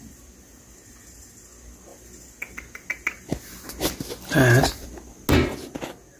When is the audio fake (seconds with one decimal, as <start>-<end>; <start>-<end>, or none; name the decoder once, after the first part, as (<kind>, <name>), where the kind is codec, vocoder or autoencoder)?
none